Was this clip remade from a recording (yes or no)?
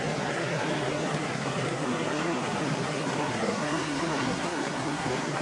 yes